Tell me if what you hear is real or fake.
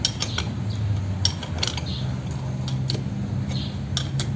real